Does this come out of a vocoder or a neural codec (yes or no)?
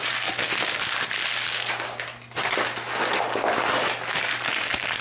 no